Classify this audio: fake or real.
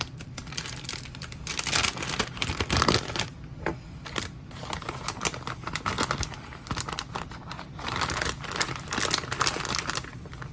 real